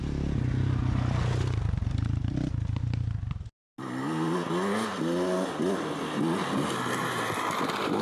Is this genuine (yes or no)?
yes